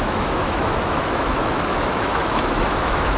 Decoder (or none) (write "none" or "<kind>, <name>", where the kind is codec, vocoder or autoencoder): autoencoder, DAC-VAE